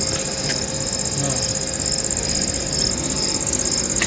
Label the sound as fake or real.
real